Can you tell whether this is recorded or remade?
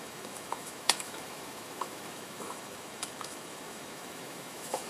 remade